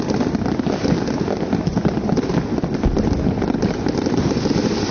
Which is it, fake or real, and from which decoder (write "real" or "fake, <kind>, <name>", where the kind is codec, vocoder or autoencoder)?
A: real